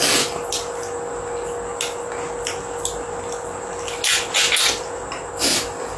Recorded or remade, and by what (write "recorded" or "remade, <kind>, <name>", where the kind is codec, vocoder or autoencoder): recorded